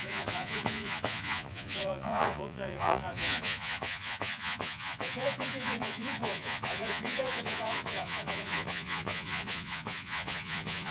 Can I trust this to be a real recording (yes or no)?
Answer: no